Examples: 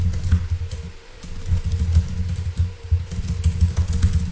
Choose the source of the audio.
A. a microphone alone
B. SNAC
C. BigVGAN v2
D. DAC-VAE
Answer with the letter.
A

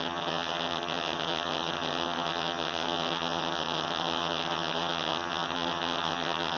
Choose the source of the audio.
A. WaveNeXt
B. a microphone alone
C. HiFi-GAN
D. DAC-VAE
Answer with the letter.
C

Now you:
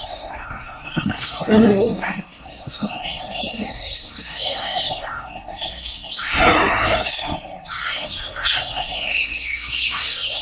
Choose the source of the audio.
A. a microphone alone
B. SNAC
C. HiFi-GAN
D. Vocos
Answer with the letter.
B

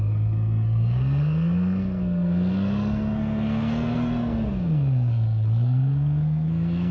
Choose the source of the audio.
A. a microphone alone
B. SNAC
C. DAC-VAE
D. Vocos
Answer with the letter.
B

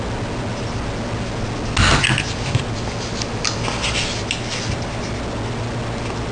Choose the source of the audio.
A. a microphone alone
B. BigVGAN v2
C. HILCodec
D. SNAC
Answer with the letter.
A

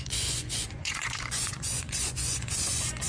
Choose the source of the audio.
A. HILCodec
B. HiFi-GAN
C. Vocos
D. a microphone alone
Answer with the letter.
C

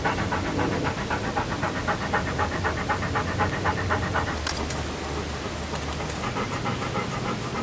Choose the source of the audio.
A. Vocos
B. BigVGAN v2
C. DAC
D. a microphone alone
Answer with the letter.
D